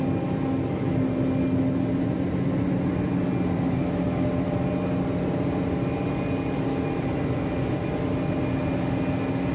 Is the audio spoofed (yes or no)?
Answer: no